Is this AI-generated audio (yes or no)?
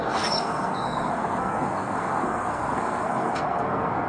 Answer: yes